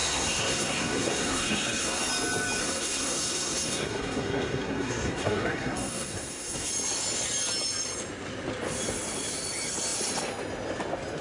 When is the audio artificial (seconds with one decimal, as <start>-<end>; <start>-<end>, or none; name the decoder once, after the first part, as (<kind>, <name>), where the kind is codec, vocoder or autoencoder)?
0.0-2.0 (codec, SNAC); 2.6-6.7